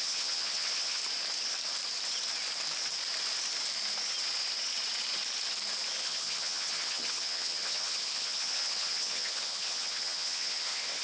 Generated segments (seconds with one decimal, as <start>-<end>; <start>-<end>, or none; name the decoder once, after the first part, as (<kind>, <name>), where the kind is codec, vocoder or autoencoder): 0.0-1.0 (vocoder, HiFi-GAN); 6.0-11.0